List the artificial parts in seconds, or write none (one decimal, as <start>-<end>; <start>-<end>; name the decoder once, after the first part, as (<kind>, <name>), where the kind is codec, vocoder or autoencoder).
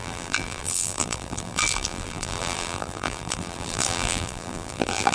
0.0-5.1 (vocoder, BigVGAN v2)